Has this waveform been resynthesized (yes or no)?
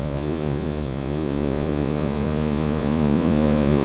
yes